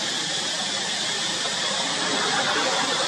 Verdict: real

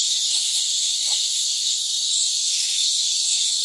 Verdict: fake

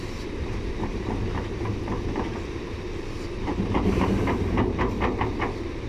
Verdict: fake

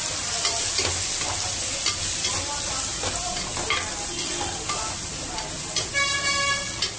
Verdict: real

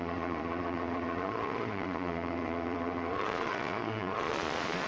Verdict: fake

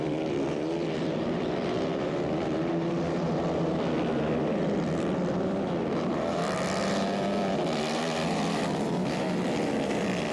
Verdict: fake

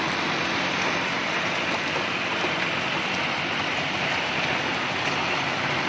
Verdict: fake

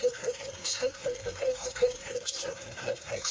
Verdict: fake